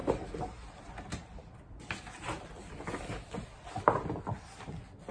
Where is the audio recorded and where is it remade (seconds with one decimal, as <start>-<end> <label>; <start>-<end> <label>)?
0.0-5.1 recorded